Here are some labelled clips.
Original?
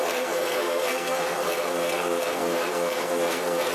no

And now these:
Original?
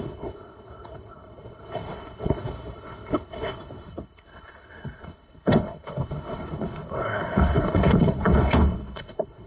no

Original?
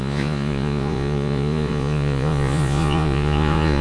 no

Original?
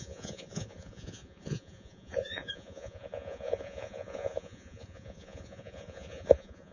no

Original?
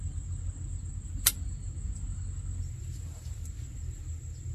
yes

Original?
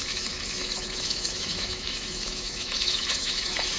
no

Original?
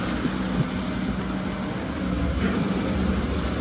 yes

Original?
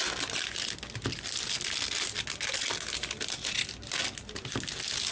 yes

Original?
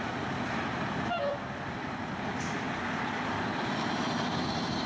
no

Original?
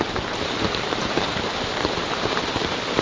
no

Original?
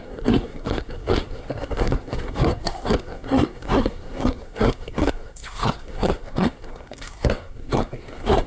no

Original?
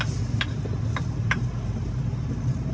yes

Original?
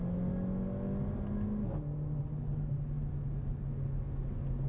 yes